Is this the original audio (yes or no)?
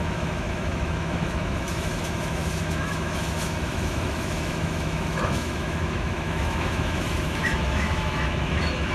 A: no